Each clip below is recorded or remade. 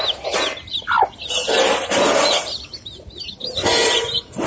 recorded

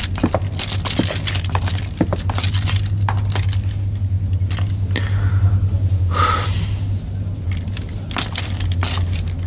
recorded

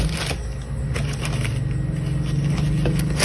recorded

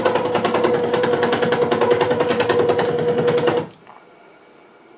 recorded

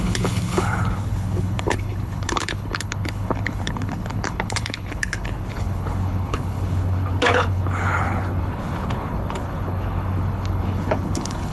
remade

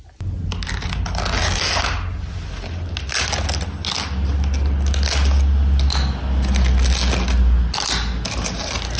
recorded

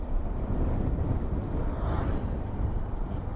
recorded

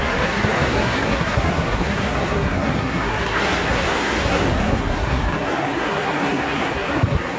remade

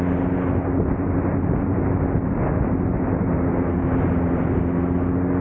recorded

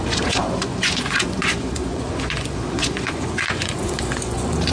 remade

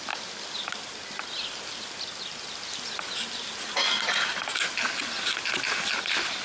recorded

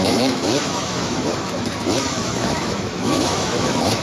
remade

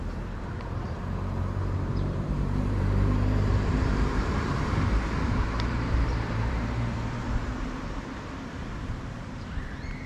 remade